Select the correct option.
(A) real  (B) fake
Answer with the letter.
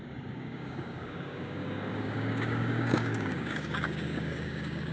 B